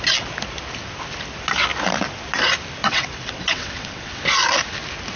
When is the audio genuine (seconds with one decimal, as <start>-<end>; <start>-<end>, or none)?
0.0-2.8; 4.2-5.2

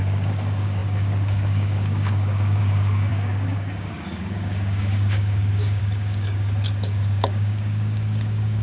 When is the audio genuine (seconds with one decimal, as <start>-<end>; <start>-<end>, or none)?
none

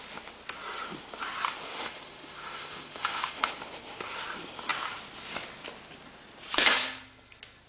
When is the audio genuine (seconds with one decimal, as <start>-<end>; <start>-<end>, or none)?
0.0-1.7; 3.5-7.7

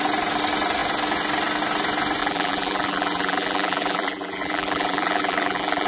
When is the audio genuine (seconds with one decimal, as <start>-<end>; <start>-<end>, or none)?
0.0-2.2

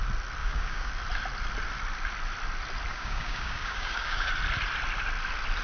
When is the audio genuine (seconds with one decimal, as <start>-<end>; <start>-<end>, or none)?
0.0-0.4; 0.9-2.9; 4.3-5.6